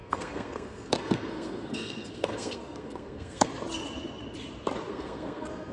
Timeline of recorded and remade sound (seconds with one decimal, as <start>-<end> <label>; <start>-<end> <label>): 0.0-3.5 remade; 3.5-4.9 recorded; 4.9-5.7 remade